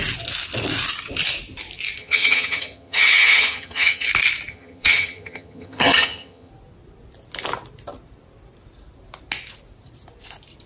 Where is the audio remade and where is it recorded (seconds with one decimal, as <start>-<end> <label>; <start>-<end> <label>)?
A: 0.0-2.0 recorded; 2.0-4.1 remade; 4.1-4.5 recorded; 4.5-6.5 remade; 6.5-10.7 recorded